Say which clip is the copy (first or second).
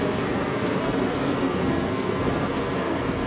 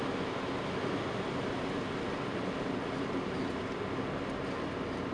first